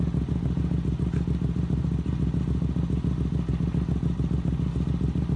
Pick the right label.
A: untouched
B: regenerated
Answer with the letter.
A